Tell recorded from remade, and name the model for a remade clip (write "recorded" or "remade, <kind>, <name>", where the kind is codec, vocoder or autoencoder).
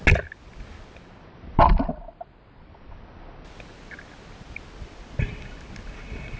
recorded